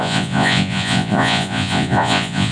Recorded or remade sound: remade